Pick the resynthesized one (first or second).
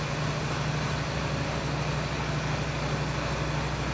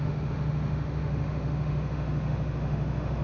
second